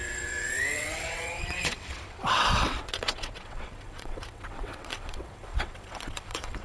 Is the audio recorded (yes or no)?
no